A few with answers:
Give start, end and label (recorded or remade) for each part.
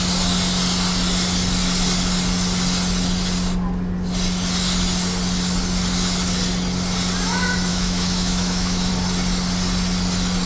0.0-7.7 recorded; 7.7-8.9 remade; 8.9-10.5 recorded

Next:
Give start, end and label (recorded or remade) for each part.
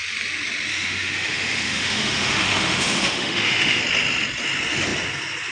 0.0-0.7 recorded; 0.7-3.8 remade; 3.8-5.5 recorded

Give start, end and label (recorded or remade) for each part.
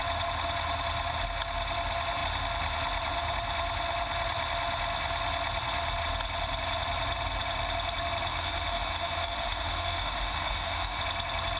0.0-8.3 recorded; 8.3-11.0 remade; 11.0-11.6 recorded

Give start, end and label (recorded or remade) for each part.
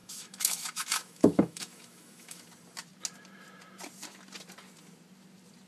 0.0-2.4 remade; 2.4-5.7 recorded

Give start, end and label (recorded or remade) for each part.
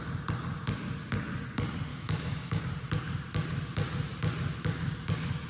0.0-1.9 recorded; 1.9-2.6 remade; 2.6-5.5 recorded